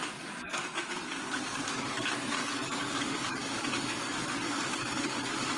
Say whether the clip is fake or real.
fake